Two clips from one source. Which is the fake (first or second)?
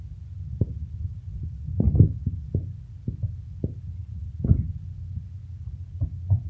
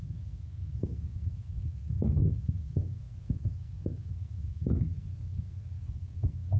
second